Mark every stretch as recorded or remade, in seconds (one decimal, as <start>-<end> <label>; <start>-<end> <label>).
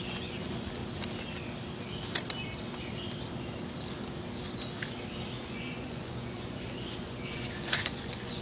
0.0-0.8 remade; 0.8-5.5 recorded; 5.5-8.4 remade